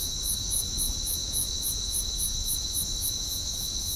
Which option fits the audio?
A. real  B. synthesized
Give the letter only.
B